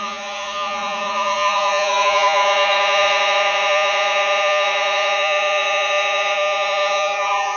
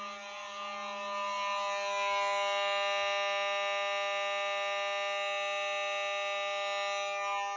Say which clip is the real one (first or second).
second